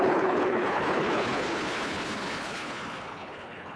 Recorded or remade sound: remade